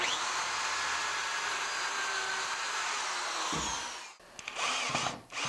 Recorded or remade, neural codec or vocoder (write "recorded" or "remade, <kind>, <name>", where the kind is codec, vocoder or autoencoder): recorded